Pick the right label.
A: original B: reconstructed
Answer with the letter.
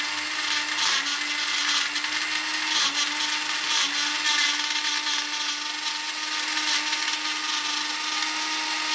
A